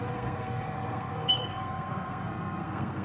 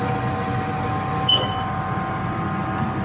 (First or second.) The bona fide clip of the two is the second